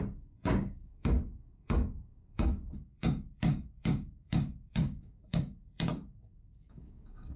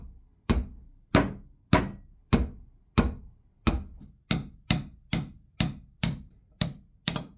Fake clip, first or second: first